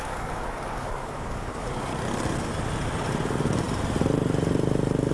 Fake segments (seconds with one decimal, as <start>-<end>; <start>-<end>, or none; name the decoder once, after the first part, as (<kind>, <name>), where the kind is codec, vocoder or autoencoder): 0.0-1.9 (codec, DAC)